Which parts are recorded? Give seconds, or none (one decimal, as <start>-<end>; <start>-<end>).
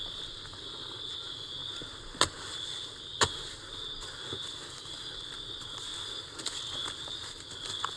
0.0-8.0